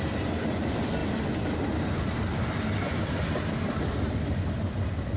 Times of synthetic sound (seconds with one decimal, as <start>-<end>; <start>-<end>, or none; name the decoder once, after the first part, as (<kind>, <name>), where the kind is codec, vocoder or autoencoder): 0.0-5.2 (vocoder, BigVGAN v2)